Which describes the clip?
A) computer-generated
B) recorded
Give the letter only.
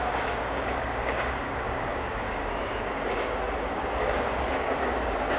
A